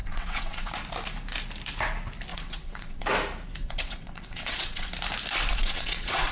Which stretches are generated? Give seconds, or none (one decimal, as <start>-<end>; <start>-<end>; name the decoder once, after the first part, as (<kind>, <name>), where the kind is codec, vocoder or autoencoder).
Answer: 0.0-0.7 (vocoder, WaveNeXt); 2.3-3.0; 3.6-4.9; 5.5-6.3